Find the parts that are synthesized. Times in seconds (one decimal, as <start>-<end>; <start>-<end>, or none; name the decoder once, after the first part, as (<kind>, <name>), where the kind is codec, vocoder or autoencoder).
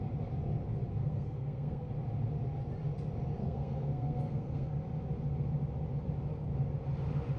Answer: 1.0-1.8 (codec, SNAC); 3.4-4.7